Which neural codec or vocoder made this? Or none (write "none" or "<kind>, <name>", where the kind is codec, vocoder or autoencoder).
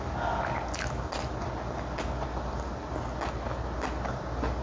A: none